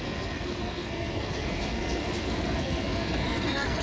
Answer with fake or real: fake